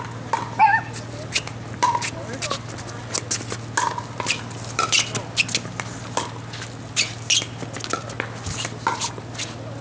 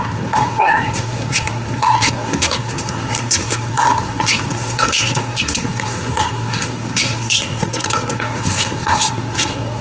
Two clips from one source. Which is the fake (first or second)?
second